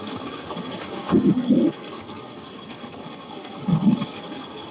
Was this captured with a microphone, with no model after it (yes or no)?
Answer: no